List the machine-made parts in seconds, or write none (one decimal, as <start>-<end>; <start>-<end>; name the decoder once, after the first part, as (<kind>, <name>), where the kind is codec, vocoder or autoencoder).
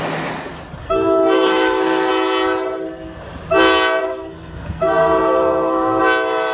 0.8-2.1 (codec, SNAC); 4.0-6.0